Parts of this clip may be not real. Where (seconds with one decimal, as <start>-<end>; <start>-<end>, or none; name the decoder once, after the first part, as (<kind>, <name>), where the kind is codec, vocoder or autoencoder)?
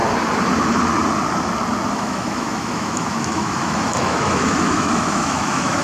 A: 1.9-5.8 (autoencoder, DAC-VAE)